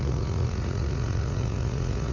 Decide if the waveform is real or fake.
fake